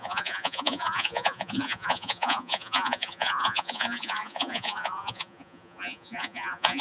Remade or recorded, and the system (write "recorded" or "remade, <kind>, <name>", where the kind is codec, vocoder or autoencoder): remade, vocoder, Vocos